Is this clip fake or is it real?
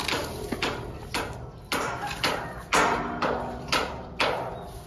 real